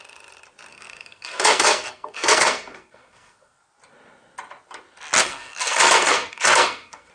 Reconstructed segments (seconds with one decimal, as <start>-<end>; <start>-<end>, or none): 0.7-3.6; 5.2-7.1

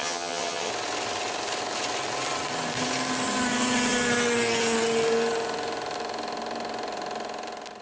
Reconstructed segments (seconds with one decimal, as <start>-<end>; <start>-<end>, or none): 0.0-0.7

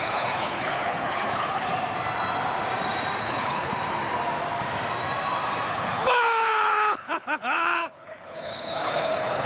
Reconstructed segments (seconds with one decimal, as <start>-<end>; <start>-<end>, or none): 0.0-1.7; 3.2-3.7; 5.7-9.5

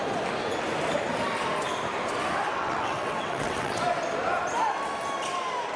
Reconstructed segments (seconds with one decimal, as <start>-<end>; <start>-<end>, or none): 2.5-3.8

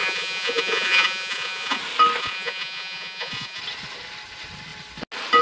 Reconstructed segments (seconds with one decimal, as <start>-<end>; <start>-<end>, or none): 0.0-1.8; 2.2-3.6